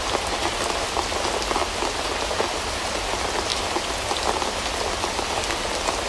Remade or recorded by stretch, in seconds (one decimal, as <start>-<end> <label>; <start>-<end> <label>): 0.0-6.1 recorded